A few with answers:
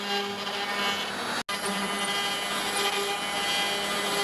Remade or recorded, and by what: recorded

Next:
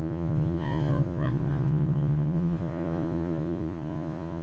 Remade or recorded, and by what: remade, vocoder, Vocos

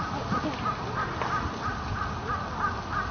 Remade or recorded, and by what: recorded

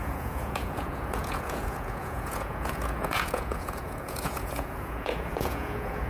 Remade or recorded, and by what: remade, vocoder, Vocos